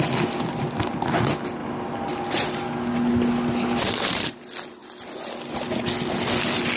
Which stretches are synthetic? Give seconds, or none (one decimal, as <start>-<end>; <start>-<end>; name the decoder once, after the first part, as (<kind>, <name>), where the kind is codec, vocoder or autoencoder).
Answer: none